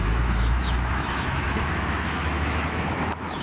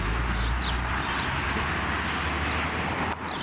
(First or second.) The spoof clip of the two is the first